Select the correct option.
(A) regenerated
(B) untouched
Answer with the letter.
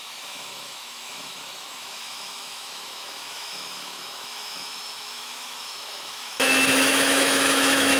A